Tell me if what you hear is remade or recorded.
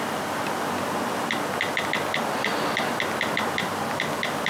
recorded